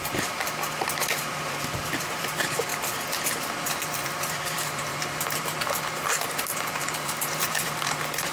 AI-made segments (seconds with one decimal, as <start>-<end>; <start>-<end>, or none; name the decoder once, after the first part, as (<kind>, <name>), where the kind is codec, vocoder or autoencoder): 0.0-2.7 (vocoder, BigVGAN v2); 3.3-8.3